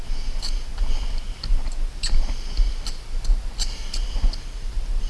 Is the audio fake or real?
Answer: real